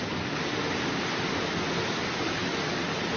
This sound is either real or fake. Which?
real